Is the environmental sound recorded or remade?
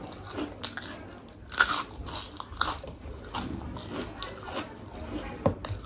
recorded